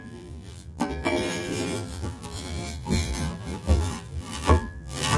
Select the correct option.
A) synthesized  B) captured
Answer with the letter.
A